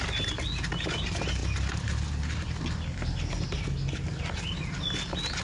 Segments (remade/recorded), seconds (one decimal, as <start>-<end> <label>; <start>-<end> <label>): 0.0-5.4 recorded